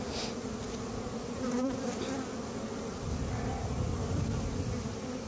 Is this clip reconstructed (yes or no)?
no